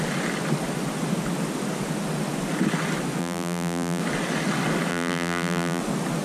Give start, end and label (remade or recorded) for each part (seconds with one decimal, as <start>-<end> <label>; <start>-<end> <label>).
0.0-3.2 recorded; 3.2-4.0 remade; 4.0-4.9 recorded; 4.9-5.8 remade; 5.8-6.2 recorded